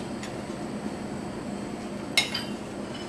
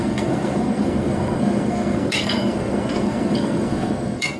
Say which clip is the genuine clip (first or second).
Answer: first